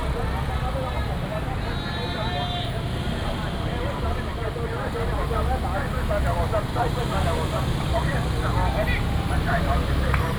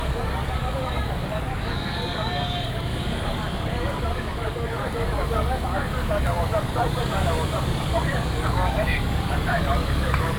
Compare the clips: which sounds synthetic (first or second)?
second